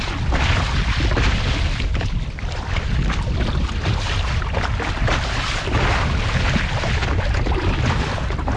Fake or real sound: real